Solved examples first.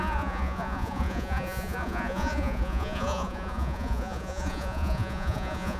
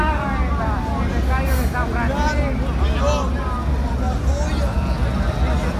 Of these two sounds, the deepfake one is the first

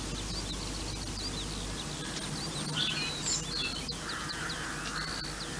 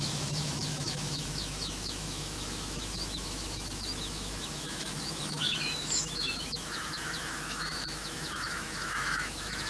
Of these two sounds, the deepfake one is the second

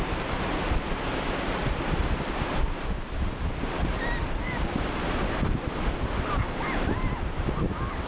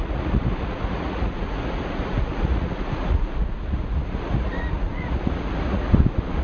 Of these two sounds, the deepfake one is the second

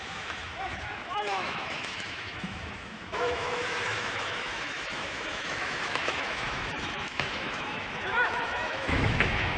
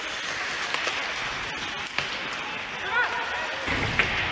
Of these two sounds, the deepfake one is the first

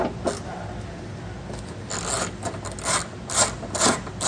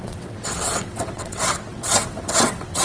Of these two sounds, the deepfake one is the second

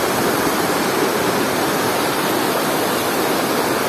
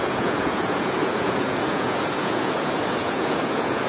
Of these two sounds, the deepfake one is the second